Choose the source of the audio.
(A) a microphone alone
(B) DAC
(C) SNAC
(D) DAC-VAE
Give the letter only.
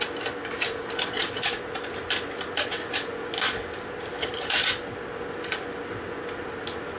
A